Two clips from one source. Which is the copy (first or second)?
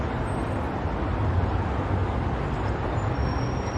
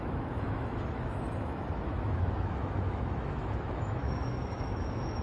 second